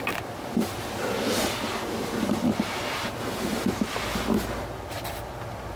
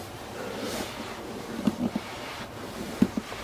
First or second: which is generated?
second